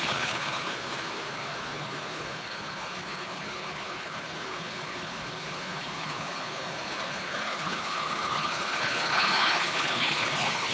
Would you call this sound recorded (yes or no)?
no